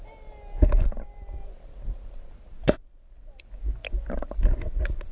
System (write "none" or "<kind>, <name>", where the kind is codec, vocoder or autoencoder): none